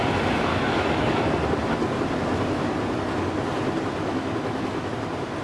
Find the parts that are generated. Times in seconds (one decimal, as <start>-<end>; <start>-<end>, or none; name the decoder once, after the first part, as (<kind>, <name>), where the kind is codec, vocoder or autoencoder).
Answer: 0.5-1.3 (autoencoder, DAC-VAE); 4.1-4.9